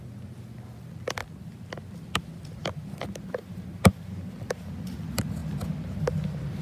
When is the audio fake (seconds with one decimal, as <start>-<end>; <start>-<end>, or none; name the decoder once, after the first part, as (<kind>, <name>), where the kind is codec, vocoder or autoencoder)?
none